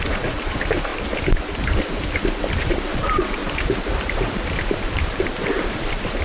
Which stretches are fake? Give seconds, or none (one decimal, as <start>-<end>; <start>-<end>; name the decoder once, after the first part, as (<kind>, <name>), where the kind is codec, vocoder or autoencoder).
0.0-0.9 (vocoder, BigVGAN v2); 2.6-3.4; 4.9-6.2